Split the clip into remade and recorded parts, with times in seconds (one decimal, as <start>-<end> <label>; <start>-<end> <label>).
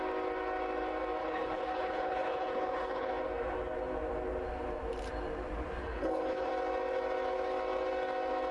0.0-1.2 recorded; 1.2-3.1 remade; 3.1-5.8 recorded; 5.8-6.5 remade; 6.5-8.5 recorded